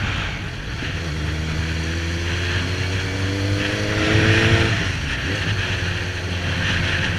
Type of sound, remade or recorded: recorded